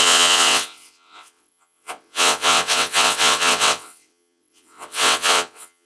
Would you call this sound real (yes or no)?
no